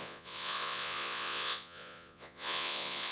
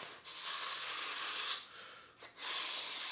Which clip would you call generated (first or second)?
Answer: first